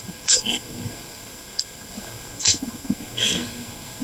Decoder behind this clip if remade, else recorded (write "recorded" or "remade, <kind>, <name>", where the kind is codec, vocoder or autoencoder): remade, codec, SNAC